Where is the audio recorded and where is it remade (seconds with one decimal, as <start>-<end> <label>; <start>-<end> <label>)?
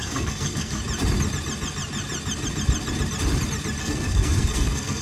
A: 0.0-0.8 remade; 0.8-3.8 recorded; 3.8-5.0 remade